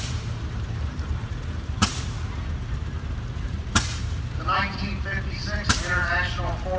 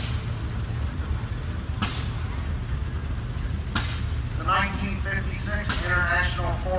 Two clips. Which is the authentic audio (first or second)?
second